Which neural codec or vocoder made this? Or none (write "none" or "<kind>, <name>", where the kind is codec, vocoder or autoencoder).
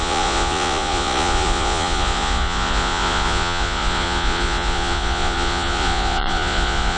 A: vocoder, Vocos